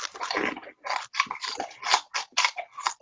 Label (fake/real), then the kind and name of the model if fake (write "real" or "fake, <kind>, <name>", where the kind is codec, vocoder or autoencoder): real